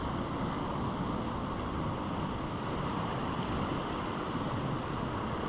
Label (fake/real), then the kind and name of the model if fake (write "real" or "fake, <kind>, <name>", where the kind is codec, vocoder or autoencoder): real